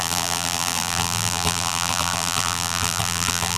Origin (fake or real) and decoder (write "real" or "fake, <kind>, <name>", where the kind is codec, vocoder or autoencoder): fake, vocoder, BigVGAN v2